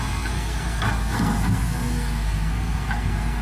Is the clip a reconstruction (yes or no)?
yes